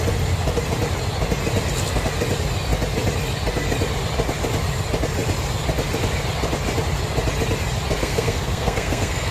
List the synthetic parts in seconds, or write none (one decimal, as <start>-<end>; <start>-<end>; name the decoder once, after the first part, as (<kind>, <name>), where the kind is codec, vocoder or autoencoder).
8.0-9.3 (codec, SNAC)